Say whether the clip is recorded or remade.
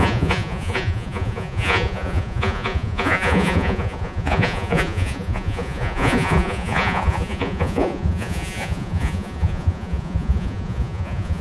remade